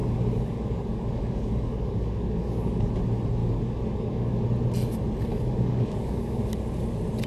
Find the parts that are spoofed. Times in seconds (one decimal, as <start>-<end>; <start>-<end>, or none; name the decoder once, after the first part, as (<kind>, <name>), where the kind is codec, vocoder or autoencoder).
0.0-2.9 (codec, DAC); 3.4-4.4; 5.3-6.4